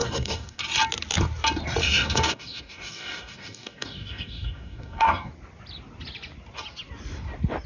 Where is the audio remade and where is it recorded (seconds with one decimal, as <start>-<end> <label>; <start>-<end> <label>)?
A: 0.0-0.6 remade; 0.6-1.8 recorded; 1.8-5.3 remade; 5.3-7.7 recorded